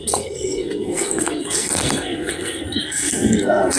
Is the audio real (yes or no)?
no